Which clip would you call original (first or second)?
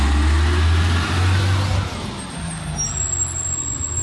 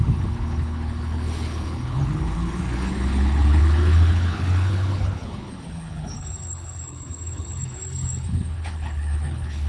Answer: first